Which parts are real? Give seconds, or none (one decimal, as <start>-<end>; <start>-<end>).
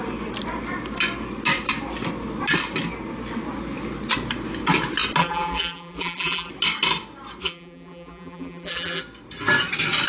0.0-5.2; 6.5-7.4; 9.0-10.1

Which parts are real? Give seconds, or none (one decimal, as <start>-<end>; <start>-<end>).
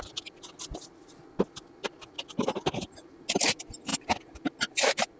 0.0-5.2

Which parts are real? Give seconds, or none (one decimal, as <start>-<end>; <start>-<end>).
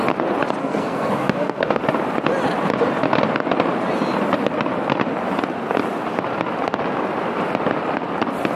0.0-0.6; 1.8-8.6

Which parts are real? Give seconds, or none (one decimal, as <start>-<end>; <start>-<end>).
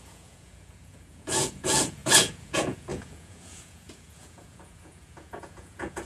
none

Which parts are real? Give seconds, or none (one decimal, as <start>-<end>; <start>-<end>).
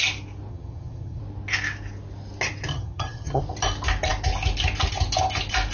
0.0-0.5; 1.2-2.7; 3.4-5.7